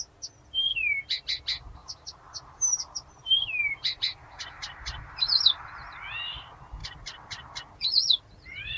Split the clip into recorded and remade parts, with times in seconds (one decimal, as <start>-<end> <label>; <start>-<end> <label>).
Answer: 0.0-1.8 recorded; 1.8-6.1 remade; 6.1-8.8 recorded